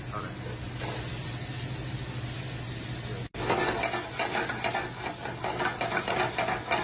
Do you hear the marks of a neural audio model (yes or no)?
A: no